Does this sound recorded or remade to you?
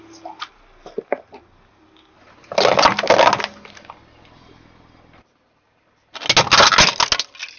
recorded